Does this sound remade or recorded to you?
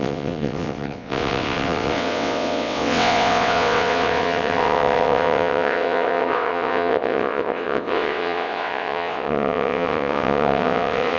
remade